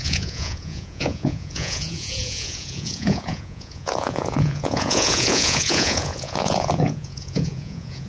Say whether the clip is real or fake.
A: fake